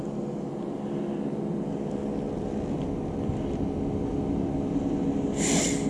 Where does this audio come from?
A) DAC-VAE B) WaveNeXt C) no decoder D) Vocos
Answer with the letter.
C